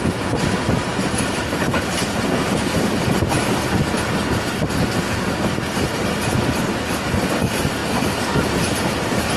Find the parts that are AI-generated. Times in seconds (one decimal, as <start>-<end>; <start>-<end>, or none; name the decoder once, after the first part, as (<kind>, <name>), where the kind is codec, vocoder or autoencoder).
none